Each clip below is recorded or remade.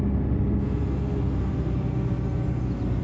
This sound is recorded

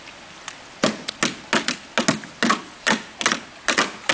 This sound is recorded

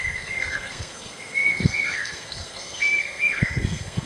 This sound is remade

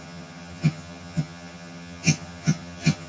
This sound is remade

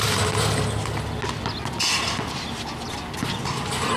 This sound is recorded